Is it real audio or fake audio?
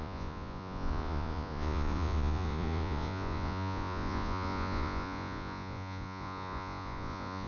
fake